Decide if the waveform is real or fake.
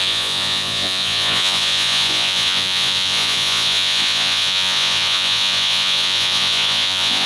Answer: fake